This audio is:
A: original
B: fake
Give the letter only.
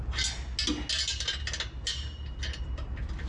A